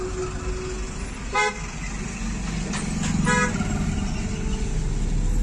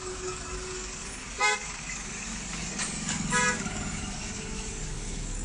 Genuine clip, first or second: first